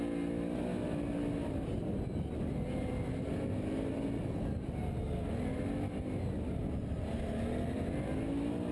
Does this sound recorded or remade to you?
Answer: recorded